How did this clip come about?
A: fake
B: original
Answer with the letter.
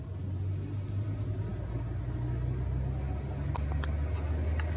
B